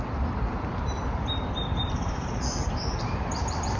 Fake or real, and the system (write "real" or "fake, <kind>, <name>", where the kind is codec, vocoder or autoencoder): fake, vocoder, BigVGAN v2